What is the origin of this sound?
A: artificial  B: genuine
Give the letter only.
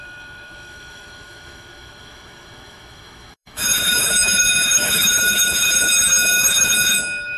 A